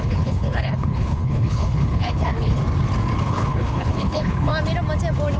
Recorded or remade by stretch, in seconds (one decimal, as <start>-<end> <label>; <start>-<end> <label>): 0.0-2.6 remade; 2.6-3.2 recorded; 3.2-4.5 remade; 4.5-5.4 recorded

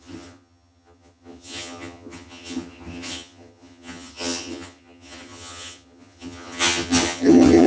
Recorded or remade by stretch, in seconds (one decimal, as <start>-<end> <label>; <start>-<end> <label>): 0.0-7.7 remade

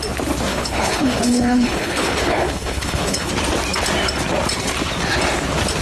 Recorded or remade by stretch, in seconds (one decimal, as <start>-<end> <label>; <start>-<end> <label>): 0.0-0.5 recorded; 0.5-3.3 remade; 3.3-5.8 recorded

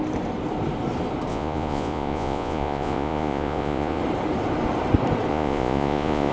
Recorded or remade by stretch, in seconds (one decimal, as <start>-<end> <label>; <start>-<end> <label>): 0.0-1.3 recorded; 1.3-4.0 remade; 4.0-5.3 recorded; 5.3-6.3 remade

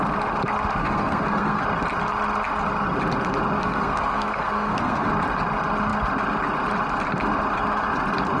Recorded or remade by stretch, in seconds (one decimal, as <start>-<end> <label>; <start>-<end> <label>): 0.0-0.8 recorded; 0.8-1.6 remade; 1.6-3.6 recorded; 3.6-5.1 remade; 5.1-8.4 recorded

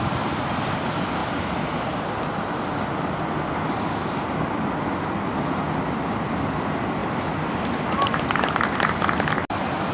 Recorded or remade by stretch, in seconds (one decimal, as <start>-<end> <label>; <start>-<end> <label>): 0.0-7.0 recorded; 7.0-7.5 remade; 7.5-9.9 recorded

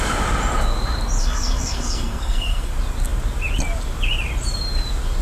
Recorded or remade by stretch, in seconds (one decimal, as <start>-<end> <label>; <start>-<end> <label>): 0.0-1.2 recorded; 1.2-2.7 remade; 2.7-5.2 recorded